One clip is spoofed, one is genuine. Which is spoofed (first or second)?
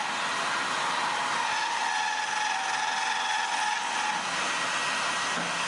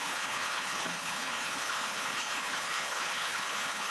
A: second